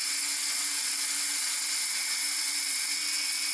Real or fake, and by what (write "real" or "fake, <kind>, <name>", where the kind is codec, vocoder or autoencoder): fake, vocoder, WaveNeXt